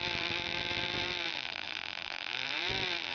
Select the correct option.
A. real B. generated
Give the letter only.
B